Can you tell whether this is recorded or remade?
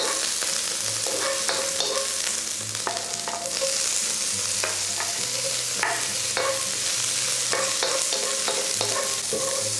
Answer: recorded